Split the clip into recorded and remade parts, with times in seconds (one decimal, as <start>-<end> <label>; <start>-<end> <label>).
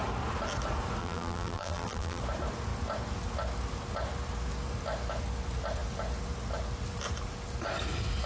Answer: 0.0-1.0 recorded; 1.0-2.2 remade; 2.2-8.3 recorded